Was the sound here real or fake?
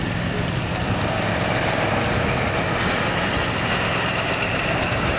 real